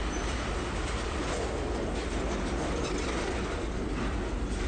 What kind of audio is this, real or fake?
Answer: real